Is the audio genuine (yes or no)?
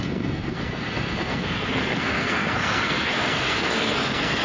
no